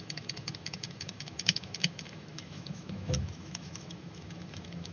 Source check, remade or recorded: remade